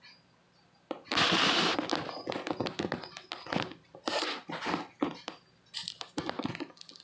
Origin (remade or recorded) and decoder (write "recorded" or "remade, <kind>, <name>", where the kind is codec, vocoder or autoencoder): recorded